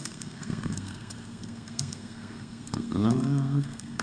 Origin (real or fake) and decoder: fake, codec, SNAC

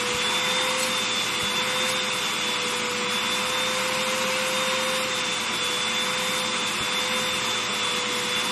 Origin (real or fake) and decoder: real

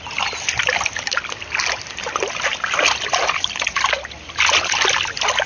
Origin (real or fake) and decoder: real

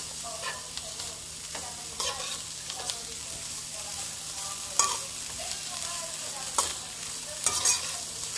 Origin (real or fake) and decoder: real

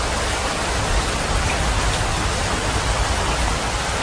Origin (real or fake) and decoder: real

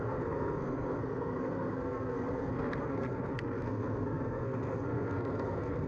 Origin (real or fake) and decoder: fake, codec, SNAC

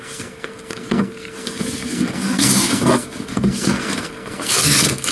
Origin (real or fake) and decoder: fake, codec, SNAC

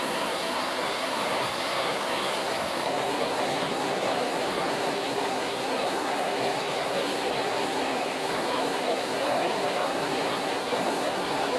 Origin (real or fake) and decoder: fake, codec, SNAC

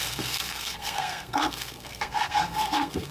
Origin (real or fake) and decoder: fake, codec, SNAC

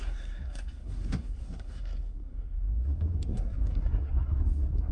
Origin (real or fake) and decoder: fake, codec, SNAC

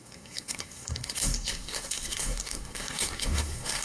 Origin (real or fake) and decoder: fake, codec, SNAC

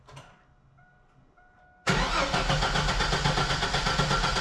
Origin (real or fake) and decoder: real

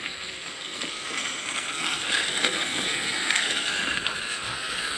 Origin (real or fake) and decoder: fake, codec, SNAC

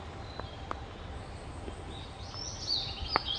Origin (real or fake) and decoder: real